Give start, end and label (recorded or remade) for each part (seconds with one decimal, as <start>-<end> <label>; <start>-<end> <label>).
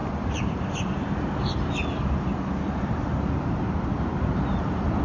0.0-1.7 remade; 1.7-4.3 recorded; 4.3-5.0 remade